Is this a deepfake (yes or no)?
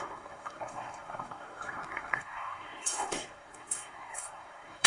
yes